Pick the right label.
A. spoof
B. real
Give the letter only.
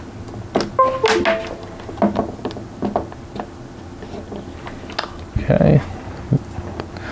B